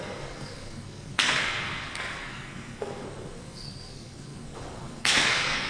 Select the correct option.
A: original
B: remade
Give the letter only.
B